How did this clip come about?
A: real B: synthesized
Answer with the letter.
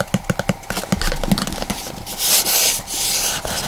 A